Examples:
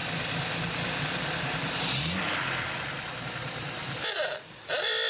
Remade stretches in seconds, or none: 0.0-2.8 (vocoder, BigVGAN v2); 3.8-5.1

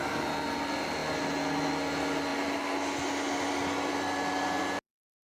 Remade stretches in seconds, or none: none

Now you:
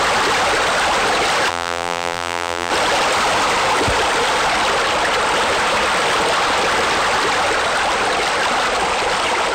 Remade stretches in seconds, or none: 1.5-2.7 (vocoder, BigVGAN v2)